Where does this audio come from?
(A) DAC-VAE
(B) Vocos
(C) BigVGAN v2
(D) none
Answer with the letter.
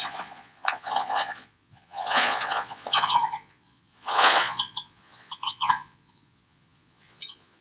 B